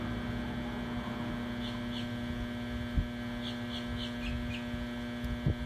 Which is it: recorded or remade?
recorded